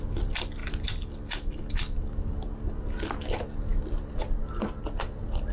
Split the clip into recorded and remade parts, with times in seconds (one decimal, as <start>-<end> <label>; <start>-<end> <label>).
0.0-5.5 recorded